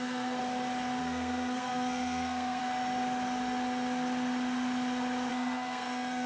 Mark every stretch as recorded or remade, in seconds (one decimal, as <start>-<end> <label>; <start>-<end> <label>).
0.0-0.4 remade; 0.4-1.0 recorded; 1.0-2.6 remade; 2.6-5.3 recorded; 5.3-6.3 remade